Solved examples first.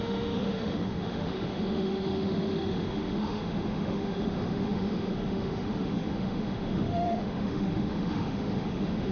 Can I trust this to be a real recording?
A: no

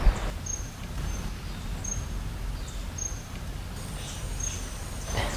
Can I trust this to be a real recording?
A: yes